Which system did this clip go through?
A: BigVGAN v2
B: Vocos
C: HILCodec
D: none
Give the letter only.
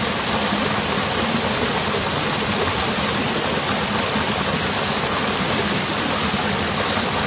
D